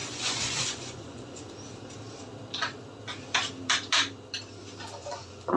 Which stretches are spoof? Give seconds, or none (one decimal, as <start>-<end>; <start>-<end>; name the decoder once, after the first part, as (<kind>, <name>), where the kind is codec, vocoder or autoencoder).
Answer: 0.0-1.5 (vocoder, Vocos); 5.0-5.6